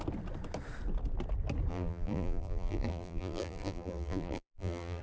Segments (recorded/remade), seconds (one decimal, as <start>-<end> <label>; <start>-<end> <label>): 0.0-1.7 recorded; 1.7-5.0 remade